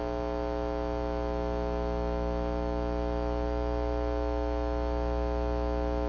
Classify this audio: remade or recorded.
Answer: recorded